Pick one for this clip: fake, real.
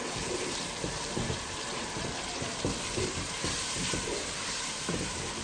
fake